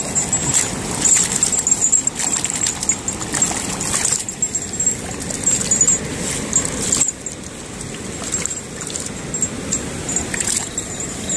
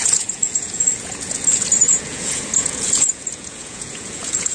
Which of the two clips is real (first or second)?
first